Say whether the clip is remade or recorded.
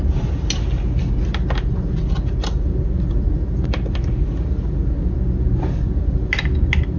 recorded